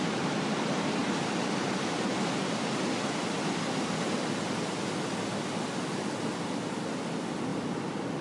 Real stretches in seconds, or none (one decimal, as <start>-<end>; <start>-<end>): 0.0-8.2